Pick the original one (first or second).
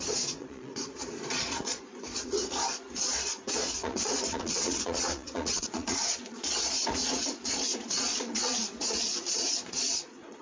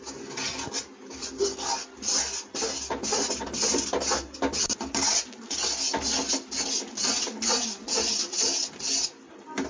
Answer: second